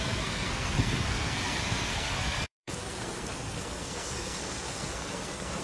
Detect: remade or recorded remade